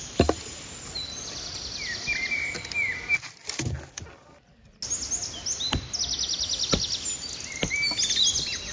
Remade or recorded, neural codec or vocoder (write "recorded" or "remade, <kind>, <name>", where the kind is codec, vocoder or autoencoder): recorded